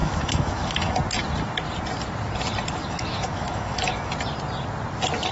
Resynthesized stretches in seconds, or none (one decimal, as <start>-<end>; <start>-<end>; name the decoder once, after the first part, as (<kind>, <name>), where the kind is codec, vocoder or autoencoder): 0.0-1.0 (autoencoder, DAC-VAE); 2.8-4.1